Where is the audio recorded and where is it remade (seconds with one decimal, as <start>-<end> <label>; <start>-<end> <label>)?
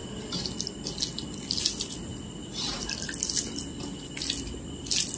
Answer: 0.0-5.2 recorded